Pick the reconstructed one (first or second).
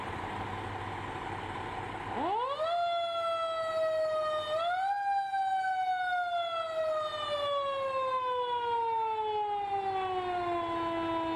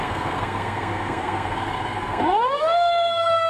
second